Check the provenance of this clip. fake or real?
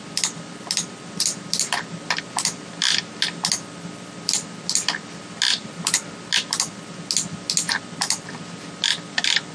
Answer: real